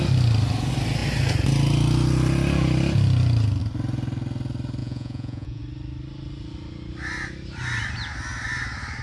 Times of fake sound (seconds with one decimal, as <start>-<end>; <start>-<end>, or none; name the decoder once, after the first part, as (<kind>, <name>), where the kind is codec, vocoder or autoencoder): 4.8-5.6 (vocoder, Vocos)